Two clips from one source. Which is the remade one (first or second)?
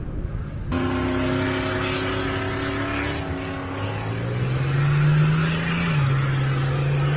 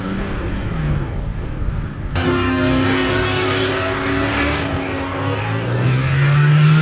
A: second